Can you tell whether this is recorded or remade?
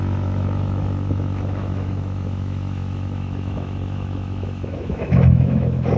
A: remade